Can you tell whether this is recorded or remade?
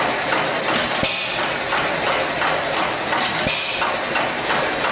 recorded